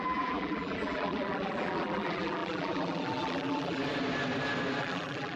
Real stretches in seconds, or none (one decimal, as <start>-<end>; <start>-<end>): 3.8-4.8